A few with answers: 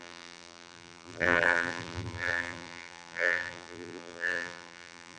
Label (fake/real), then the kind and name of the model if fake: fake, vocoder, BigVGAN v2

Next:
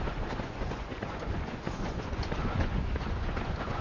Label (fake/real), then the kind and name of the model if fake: fake, vocoder, Vocos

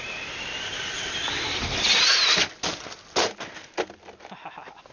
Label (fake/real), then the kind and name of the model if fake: real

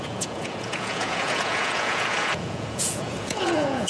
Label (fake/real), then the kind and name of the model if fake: fake, vocoder, Vocos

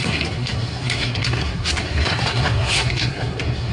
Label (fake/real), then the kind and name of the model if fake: fake, codec, SNAC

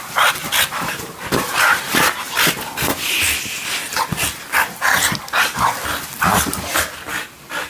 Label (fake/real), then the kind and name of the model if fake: real